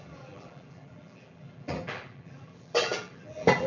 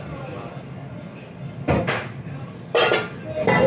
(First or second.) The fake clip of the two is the first